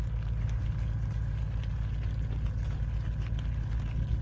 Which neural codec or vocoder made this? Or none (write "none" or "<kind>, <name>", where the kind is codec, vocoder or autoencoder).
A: none